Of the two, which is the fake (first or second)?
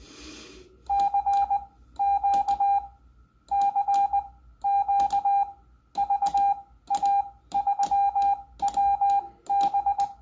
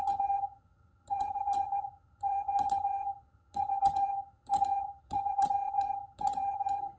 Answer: second